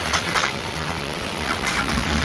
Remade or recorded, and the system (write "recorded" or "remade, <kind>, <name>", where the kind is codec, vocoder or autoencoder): remade, vocoder, WaveNeXt